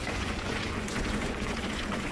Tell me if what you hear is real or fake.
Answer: fake